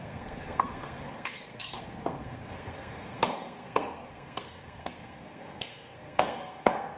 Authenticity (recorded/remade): remade